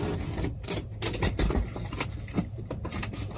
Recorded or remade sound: recorded